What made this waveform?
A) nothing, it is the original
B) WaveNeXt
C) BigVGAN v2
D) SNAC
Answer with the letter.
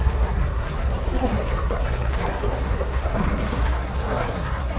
D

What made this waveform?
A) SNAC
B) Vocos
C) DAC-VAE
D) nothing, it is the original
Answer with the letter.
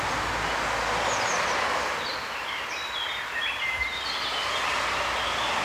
D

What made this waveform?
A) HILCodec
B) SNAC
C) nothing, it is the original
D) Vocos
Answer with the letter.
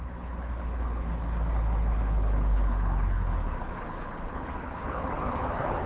A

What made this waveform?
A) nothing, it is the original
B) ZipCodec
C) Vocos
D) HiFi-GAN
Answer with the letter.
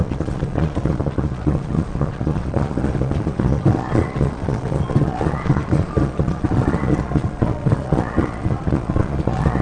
C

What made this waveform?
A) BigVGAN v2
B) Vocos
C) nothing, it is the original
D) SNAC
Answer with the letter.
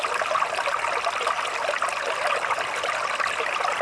C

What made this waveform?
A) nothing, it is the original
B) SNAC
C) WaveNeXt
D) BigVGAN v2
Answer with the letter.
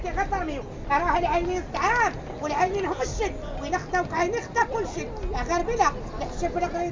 A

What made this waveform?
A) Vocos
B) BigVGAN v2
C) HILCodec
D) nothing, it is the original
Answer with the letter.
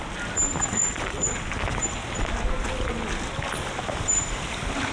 D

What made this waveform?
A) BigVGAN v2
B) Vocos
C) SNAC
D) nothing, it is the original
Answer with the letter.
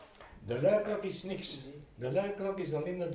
A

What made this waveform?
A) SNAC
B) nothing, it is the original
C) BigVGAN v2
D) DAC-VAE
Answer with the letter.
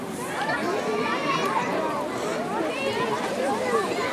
C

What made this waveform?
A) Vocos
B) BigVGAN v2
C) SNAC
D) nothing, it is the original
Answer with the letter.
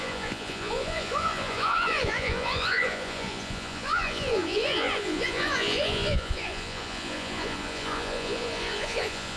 A